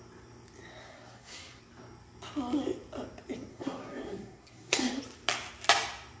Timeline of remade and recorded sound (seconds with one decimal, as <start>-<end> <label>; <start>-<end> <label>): 0.0-0.9 recorded; 0.9-1.6 remade; 1.6-3.5 recorded; 3.5-5.0 remade; 5.0-6.2 recorded

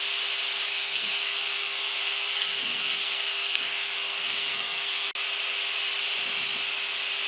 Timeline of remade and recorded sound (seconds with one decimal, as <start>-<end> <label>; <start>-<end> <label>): 0.0-0.7 recorded; 0.7-5.1 remade; 5.1-7.3 recorded

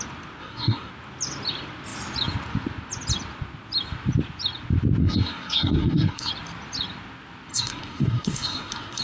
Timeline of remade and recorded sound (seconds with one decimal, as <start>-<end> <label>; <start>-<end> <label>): 0.0-0.4 recorded; 0.4-0.9 remade; 0.9-5.0 recorded; 5.0-6.3 remade; 6.3-7.5 recorded; 7.5-9.0 remade

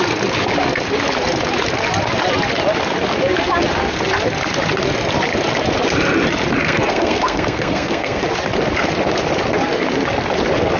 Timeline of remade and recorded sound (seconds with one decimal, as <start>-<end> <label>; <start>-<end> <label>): 0.0-6.6 recorded; 6.6-8.2 remade; 8.2-10.8 recorded